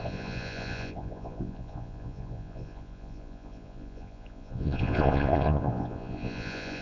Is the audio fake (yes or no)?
yes